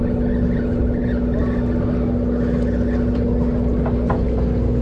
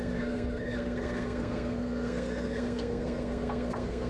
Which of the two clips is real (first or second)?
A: first